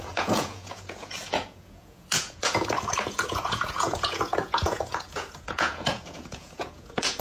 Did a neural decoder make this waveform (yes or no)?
yes